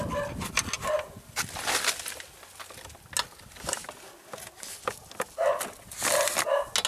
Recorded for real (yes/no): yes